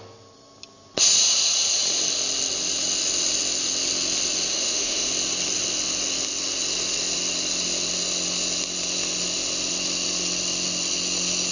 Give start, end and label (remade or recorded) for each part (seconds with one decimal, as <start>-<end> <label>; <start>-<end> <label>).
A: 0.0-4.5 recorded; 4.5-5.1 remade; 5.1-11.5 recorded